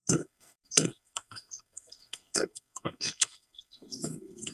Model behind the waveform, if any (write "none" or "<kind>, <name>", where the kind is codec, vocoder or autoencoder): codec, SNAC